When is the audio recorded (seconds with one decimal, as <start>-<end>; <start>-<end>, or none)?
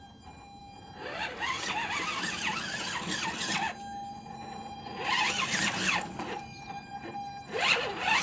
0.0-4.9; 6.9-8.2